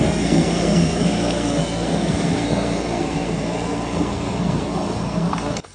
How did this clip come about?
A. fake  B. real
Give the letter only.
A